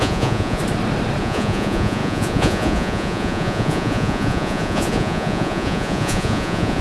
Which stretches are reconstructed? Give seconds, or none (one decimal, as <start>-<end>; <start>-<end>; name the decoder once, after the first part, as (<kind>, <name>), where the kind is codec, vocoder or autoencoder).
0.0-0.6 (vocoder, Vocos); 1.2-6.8